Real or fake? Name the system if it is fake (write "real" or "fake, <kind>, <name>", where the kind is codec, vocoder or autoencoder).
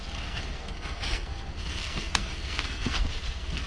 fake, codec, SNAC